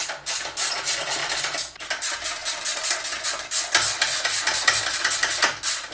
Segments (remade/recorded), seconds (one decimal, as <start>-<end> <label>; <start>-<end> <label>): 0.0-5.9 recorded